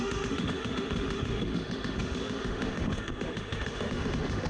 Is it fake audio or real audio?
fake